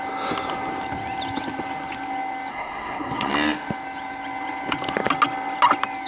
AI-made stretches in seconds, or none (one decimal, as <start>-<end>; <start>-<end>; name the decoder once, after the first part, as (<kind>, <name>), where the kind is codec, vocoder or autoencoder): 2.5-3.3 (codec, SNAC)